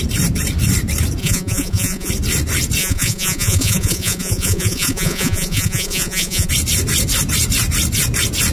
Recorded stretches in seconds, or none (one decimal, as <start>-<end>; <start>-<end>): 0.0-1.2; 2.1-2.8; 6.5-8.5